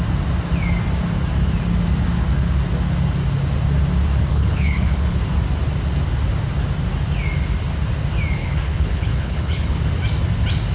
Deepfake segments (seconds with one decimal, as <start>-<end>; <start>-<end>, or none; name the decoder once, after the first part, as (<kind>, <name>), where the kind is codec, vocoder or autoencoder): 4.3-5.2 (codec, HILCodec); 8.4-9.8